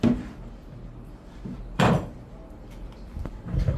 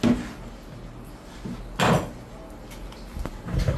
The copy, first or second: first